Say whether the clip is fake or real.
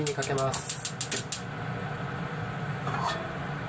real